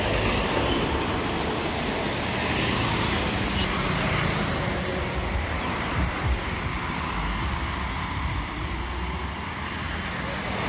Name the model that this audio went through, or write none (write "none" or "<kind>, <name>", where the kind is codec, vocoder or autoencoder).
none